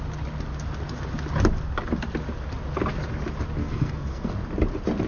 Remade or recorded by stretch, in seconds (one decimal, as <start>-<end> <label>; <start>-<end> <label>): 0.0-3.6 recorded; 3.6-4.3 remade; 4.3-5.1 recorded